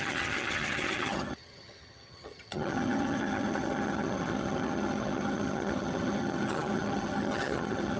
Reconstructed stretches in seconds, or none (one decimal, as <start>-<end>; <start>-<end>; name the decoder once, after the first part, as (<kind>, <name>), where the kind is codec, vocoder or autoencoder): 0.0-8.0 (vocoder, HiFi-GAN)